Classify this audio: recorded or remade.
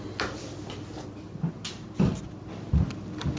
recorded